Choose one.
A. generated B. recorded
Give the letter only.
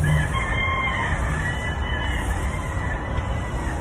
B